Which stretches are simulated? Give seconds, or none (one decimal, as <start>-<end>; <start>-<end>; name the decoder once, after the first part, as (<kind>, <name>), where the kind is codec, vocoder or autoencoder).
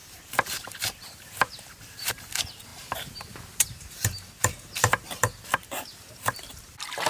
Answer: 0.0-2.3 (vocoder, BigVGAN v2); 2.7-6.6